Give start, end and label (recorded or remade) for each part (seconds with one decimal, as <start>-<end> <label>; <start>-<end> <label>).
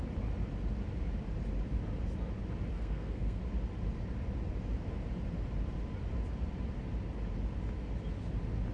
0.0-2.7 recorded; 2.7-3.4 remade; 3.4-8.7 recorded